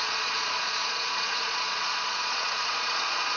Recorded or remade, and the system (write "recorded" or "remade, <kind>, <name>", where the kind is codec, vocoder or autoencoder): remade, vocoder, Vocos